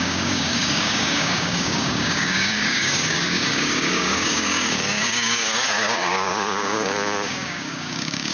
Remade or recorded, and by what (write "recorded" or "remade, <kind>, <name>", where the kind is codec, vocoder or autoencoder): remade, codec, DAC